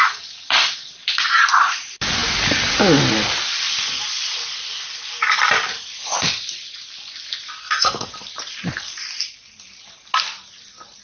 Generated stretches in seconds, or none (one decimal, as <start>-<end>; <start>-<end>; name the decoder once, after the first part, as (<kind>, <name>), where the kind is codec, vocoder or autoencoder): 7.6-8.1 (codec, SNAC)